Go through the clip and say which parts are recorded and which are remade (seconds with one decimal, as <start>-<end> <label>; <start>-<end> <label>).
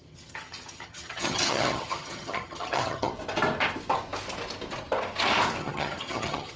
0.0-3.1 remade; 3.1-5.6 recorded; 5.6-6.6 remade